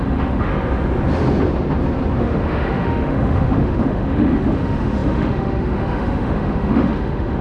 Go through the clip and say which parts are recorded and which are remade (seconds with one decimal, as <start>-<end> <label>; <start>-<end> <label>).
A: 0.0-0.5 remade; 0.5-2.2 recorded; 2.2-7.4 remade